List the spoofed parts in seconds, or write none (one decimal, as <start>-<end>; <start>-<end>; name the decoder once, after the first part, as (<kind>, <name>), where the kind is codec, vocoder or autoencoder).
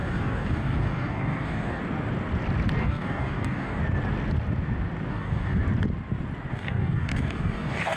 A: 0.0-1.8 (codec, DAC); 2.8-3.8; 5.1-5.6; 6.5-8.0